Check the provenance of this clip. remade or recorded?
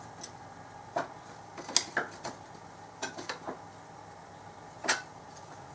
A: recorded